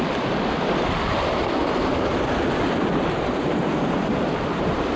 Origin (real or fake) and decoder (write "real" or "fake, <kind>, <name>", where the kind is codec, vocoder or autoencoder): real